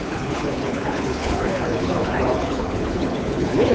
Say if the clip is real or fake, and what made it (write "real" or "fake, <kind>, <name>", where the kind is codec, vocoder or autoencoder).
fake, codec, HILCodec